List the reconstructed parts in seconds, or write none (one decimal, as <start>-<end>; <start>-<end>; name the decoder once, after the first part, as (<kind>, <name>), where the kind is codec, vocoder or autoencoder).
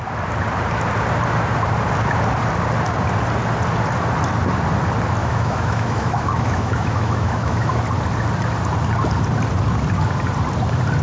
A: 5.2-7.8 (autoencoder, DAC-VAE)